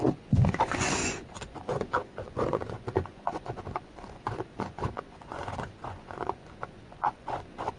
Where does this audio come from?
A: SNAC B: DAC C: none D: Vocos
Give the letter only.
D